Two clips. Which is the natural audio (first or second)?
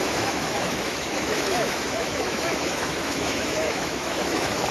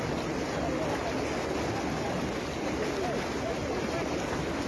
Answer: second